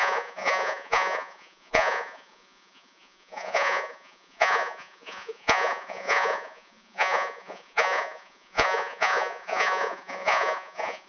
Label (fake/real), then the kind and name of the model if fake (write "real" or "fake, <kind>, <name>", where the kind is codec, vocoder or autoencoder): fake, vocoder, Vocos